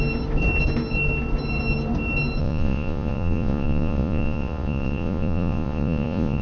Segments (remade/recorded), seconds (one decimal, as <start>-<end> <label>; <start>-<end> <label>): 0.0-2.4 recorded; 2.4-6.4 remade